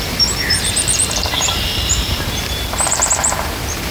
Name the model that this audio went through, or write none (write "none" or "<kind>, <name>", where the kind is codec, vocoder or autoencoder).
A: vocoder, BigVGAN v2